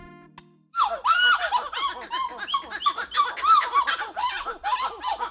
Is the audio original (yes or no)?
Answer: yes